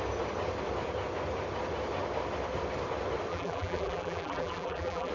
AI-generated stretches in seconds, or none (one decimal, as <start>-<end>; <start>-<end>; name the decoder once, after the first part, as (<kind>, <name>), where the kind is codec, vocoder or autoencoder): 3.3-5.1 (vocoder, BigVGAN v2)